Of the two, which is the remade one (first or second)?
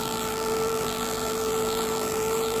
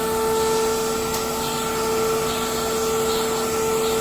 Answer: first